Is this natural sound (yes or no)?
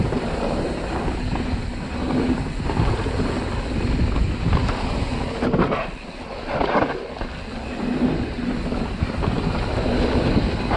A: yes